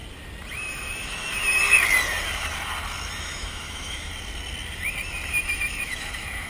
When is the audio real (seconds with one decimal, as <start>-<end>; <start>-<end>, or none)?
0.0-0.7; 1.6-3.2; 4.1-5.3